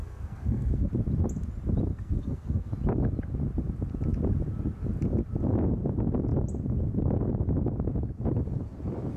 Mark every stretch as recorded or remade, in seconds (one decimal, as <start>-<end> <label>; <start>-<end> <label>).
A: 0.0-0.9 remade; 0.9-1.9 recorded; 1.9-2.7 remade; 2.7-9.2 recorded